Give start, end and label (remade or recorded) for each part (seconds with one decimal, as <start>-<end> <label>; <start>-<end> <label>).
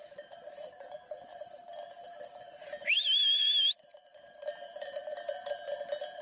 0.0-0.7 remade; 0.7-1.3 recorded; 1.3-5.0 remade; 5.0-6.2 recorded